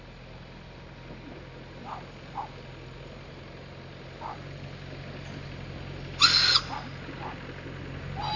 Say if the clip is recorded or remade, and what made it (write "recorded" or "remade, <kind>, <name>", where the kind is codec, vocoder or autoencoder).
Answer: recorded